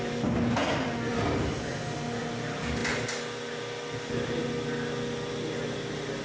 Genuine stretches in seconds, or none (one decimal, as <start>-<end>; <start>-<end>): 0.0-6.2